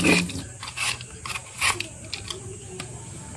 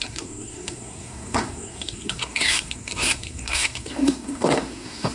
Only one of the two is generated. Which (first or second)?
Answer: second